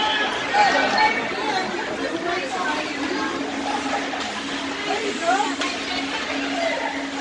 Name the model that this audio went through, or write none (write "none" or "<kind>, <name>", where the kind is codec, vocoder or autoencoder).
none